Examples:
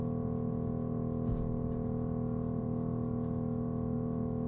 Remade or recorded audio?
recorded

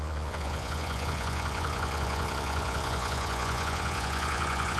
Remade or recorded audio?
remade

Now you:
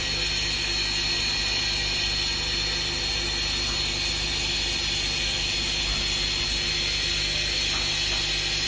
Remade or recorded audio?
recorded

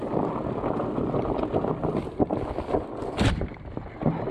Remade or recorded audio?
recorded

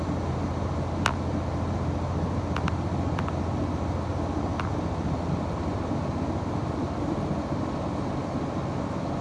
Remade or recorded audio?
recorded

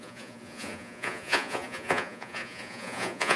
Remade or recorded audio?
remade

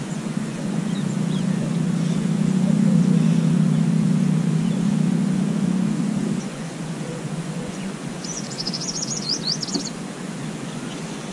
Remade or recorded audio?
remade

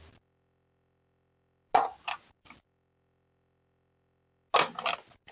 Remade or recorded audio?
recorded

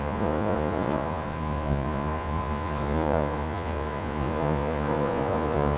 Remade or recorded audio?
remade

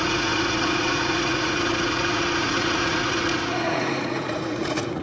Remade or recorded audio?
remade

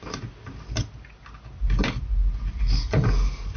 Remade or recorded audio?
recorded